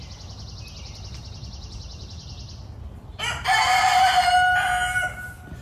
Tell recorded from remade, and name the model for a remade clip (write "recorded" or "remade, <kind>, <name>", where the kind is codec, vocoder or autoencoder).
recorded